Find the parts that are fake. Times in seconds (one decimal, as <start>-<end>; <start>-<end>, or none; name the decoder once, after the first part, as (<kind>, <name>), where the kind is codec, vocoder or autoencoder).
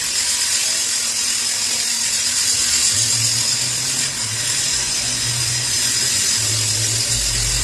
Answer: 4.7-6.0 (vocoder, Vocos)